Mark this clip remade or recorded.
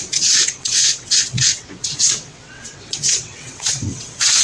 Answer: remade